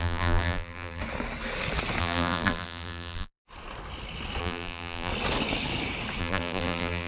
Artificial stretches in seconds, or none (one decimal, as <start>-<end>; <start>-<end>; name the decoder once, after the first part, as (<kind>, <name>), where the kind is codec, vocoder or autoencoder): 0.0-1.0 (vocoder, BigVGAN v2); 2.0-3.4; 4.4-5.1; 6.2-7.1